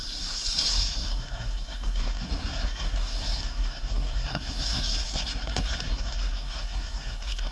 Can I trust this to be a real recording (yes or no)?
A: no